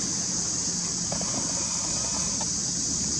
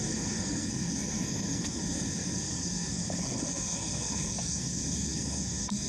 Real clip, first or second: first